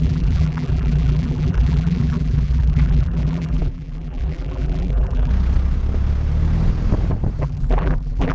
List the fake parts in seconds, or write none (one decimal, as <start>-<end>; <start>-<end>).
0.0-5.3; 7.4-8.3